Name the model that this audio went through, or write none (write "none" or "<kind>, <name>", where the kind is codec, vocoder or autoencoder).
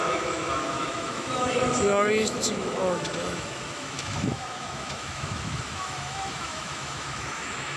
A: autoencoder, DAC-VAE